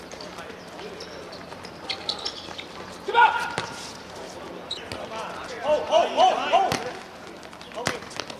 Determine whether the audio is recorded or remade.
recorded